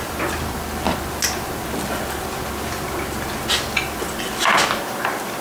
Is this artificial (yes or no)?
no